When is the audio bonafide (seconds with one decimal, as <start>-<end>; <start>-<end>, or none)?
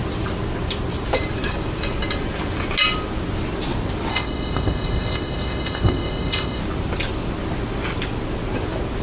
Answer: 0.0-4.1; 6.6-9.0